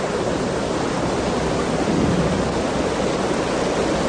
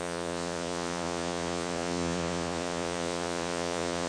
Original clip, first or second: first